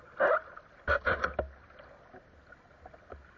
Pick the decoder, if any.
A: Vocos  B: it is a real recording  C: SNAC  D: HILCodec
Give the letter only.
B